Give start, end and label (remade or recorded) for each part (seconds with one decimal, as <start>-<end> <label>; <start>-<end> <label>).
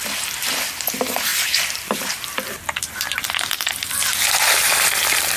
0.0-5.4 recorded